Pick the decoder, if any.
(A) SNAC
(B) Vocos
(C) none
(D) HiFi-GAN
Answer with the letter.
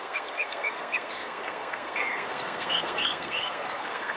A